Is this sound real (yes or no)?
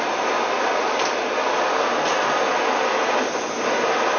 yes